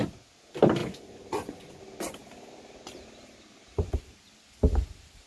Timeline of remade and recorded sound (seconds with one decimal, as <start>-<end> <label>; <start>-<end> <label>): 0.0-0.8 recorded; 0.8-1.8 remade; 1.8-5.3 recorded